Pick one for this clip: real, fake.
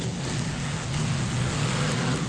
real